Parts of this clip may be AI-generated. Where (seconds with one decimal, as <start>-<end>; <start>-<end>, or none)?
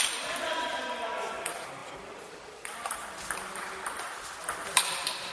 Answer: none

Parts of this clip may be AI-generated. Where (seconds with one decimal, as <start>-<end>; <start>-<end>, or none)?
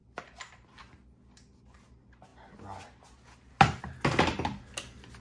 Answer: 0.0-0.8